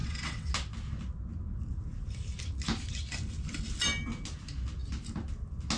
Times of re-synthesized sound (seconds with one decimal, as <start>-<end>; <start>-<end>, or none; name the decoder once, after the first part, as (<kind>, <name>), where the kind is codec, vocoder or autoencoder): 0.0-0.5 (vocoder, WaveNeXt)